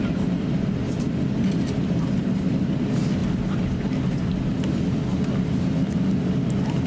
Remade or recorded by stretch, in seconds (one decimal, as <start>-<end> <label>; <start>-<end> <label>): 0.0-6.9 recorded